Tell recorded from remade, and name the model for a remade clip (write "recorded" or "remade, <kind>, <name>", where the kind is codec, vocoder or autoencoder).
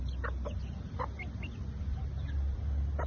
recorded